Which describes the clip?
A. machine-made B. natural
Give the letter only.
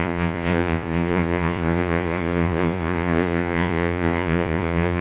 A